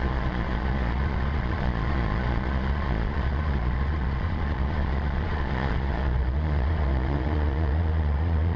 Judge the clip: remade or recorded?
remade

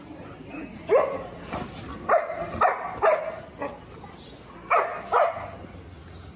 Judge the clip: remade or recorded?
recorded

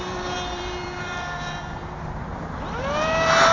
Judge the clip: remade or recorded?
remade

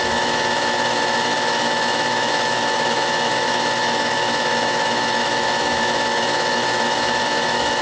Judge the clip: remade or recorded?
remade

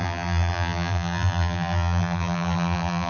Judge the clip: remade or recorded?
remade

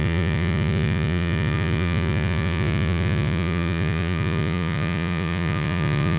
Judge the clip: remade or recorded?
remade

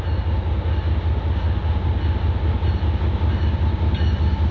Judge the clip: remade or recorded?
recorded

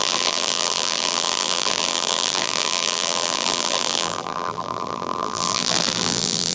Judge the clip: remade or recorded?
remade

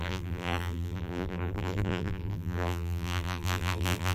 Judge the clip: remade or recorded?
remade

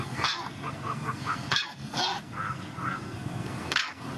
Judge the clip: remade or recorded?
remade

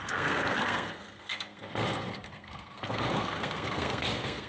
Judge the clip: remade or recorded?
remade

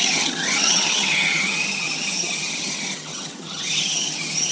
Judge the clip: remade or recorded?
remade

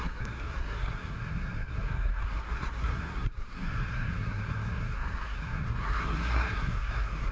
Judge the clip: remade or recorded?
remade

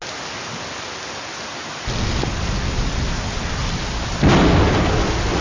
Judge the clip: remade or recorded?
recorded